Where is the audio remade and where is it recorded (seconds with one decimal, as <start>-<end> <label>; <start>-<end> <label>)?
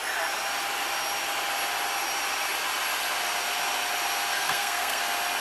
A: 0.0-4.3 recorded; 4.3-5.0 remade; 5.0-5.4 recorded